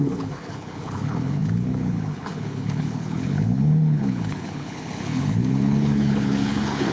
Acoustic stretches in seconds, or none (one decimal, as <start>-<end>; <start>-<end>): none